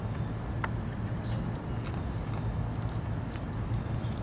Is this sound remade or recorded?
recorded